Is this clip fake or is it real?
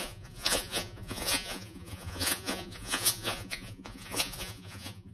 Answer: fake